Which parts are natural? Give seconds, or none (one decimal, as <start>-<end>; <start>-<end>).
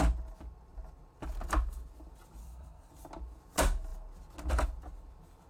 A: 0.0-2.4; 2.9-5.5